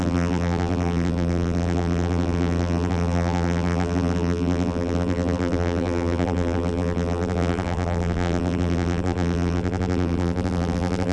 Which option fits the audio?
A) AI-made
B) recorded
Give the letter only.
A